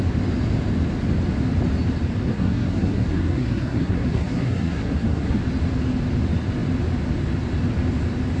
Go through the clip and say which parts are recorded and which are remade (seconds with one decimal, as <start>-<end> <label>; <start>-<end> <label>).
0.0-2.3 recorded; 2.3-5.4 remade; 5.4-8.4 recorded